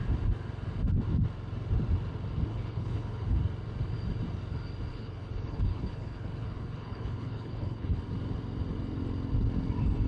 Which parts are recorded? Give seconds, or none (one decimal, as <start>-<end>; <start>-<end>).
0.0-2.5; 3.4-4.9; 8.0-10.1